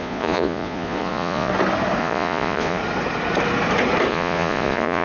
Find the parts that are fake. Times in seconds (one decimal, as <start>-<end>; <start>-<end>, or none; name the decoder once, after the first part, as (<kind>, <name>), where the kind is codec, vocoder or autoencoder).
0.0-1.5 (vocoder, Vocos); 2.0-2.8; 4.1-5.0